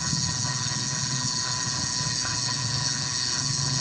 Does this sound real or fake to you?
fake